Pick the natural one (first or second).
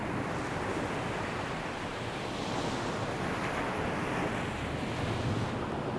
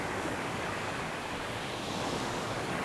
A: first